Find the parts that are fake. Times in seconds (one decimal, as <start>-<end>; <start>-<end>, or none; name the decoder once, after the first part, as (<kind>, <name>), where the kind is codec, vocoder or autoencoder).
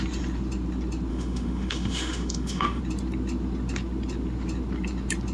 1.1-2.8 (autoencoder, DAC-VAE)